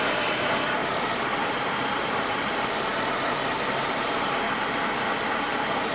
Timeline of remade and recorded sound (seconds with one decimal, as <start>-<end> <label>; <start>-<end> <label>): 0.0-0.8 recorded; 0.8-4.3 remade; 4.3-5.9 recorded